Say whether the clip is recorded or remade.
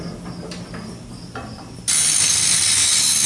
recorded